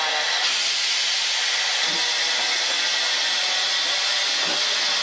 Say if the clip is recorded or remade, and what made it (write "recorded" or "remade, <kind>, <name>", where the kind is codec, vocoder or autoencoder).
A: recorded